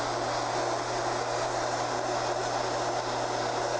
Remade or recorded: recorded